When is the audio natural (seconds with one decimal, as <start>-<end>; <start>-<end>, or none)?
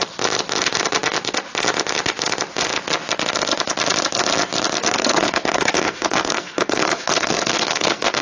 0.0-4.9